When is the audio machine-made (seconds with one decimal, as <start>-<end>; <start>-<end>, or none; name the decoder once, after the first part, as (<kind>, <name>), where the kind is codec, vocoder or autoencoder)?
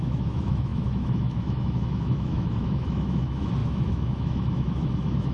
0.0-5.3 (autoencoder, DAC-VAE)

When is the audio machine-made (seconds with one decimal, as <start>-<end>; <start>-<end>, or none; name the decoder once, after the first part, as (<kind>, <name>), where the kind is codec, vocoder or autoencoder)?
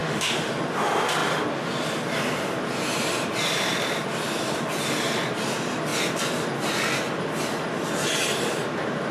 0.0-0.5 (autoencoder, DAC-VAE)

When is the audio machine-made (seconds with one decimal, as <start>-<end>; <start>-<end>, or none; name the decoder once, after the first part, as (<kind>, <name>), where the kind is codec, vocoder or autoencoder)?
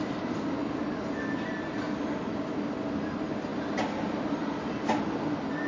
none